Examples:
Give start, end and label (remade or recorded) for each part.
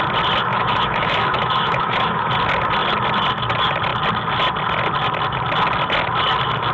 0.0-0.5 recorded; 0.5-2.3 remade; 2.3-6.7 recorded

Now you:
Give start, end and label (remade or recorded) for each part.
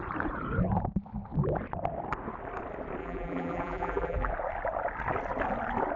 0.0-3.0 recorded; 3.0-4.3 remade; 4.3-6.0 recorded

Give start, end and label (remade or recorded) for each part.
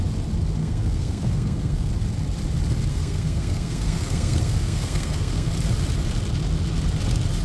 0.0-0.6 recorded; 0.6-1.9 remade; 1.9-2.9 recorded; 2.9-5.5 remade; 5.5-7.4 recorded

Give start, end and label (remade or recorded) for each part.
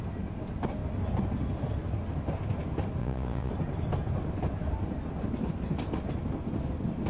0.0-3.0 recorded; 3.0-3.5 remade; 3.5-7.1 recorded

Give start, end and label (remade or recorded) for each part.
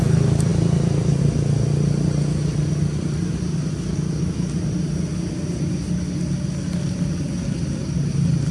0.0-8.5 recorded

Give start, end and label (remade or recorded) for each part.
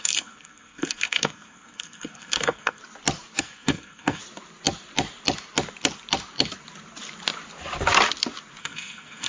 0.0-2.8 remade; 2.8-3.4 recorded; 3.4-4.2 remade; 4.2-8.6 recorded; 8.6-9.3 remade